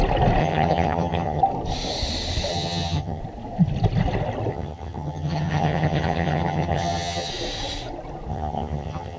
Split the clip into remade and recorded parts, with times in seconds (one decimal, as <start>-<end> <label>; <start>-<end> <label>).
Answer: 0.0-0.4 recorded; 0.4-1.4 remade; 1.4-2.5 recorded; 2.5-3.2 remade; 3.2-4.5 recorded; 4.5-7.3 remade; 7.3-8.3 recorded; 8.3-9.2 remade